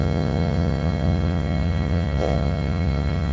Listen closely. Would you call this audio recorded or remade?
remade